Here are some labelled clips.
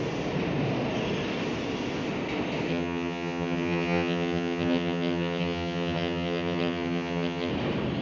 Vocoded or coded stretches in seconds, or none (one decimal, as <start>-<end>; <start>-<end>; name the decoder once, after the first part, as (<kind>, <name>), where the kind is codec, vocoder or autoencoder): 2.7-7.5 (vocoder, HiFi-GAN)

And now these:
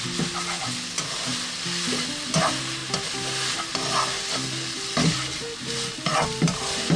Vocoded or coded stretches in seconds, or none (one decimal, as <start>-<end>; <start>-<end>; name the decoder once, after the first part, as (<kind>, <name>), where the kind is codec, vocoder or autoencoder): none

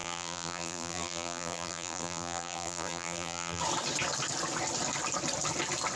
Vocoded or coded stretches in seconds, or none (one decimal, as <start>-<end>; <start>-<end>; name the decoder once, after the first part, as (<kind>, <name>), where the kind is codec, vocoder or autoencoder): 0.0-3.6 (vocoder, BigVGAN v2)

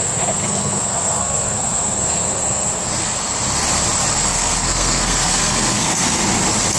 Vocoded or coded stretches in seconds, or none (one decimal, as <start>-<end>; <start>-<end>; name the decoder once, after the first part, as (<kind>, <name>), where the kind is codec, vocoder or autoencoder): 0.0-2.9 (codec, SNAC); 4.1-6.2

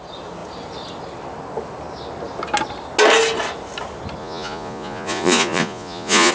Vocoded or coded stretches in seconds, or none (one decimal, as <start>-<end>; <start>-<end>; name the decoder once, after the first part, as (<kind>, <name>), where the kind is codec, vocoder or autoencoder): 4.2-6.3 (vocoder, Vocos)

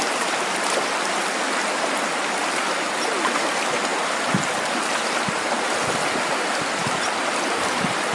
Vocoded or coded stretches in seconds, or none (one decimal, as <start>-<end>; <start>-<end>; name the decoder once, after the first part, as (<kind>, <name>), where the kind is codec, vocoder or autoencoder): none

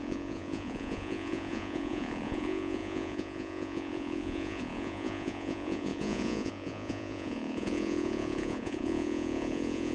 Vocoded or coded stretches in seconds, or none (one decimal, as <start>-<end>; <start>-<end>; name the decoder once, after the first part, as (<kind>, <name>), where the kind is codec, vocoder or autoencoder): 0.0-9.9 (vocoder, Vocos)

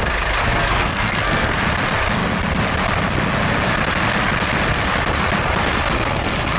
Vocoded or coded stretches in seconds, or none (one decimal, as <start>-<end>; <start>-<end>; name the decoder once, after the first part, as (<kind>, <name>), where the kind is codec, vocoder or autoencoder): 0.4-1.6 (codec, SNAC)